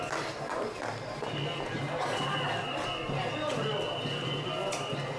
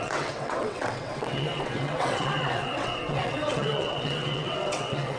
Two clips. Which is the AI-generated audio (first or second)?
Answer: second